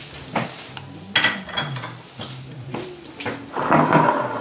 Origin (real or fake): real